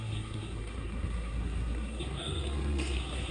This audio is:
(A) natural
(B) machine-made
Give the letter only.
B